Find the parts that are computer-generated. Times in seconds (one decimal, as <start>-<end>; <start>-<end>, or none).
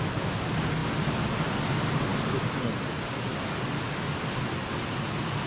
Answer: none